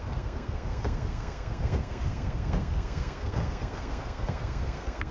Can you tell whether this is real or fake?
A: fake